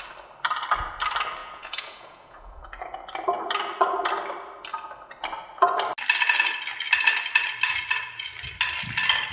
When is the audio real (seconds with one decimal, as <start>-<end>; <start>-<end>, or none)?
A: 0.0-1.4; 2.8-9.3